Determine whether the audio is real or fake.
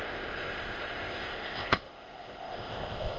fake